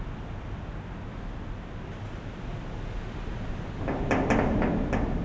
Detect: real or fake real